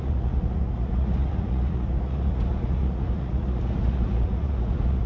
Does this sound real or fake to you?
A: fake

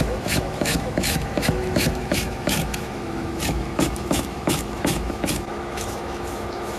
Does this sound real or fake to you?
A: fake